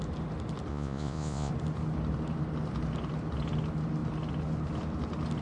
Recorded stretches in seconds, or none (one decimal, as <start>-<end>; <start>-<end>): 0.0-0.7; 1.5-5.4